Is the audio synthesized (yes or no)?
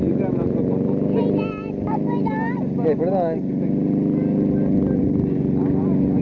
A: no